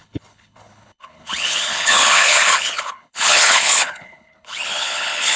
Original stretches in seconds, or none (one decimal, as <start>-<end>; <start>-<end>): none